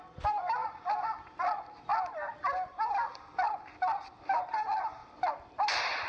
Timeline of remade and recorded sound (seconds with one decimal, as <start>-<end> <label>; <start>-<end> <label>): 0.0-0.6 recorded; 0.6-1.4 remade; 1.4-5.0 recorded; 5.0-6.1 remade